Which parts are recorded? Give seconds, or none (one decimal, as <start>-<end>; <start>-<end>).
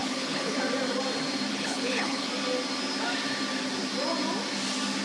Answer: 0.6-1.5; 2.3-5.0